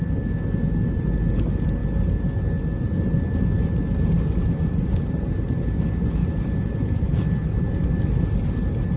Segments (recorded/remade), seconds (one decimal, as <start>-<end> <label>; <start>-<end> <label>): 0.0-9.0 recorded